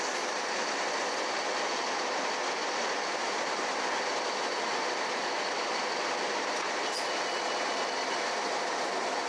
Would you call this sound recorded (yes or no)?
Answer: yes